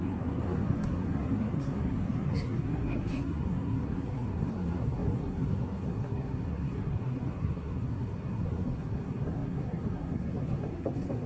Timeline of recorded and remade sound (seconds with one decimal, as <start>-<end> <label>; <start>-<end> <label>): 0.0-11.3 remade